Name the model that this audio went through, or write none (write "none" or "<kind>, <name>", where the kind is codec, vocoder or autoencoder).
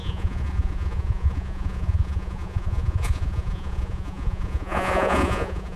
vocoder, Vocos